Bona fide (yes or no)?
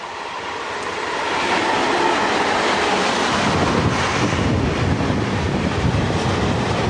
yes